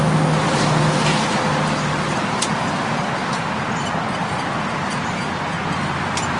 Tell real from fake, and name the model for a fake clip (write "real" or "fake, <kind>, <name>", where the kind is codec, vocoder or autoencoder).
real